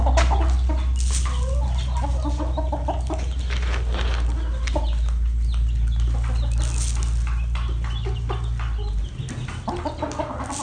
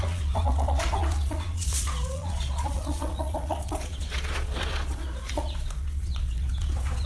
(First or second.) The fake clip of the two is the second